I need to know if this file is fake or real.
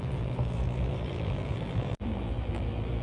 fake